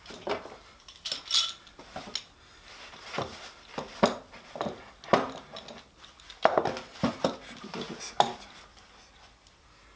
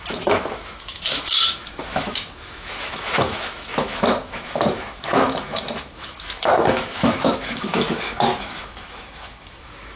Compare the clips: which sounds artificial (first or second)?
second